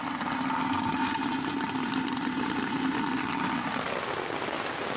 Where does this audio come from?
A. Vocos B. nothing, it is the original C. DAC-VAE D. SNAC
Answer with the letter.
B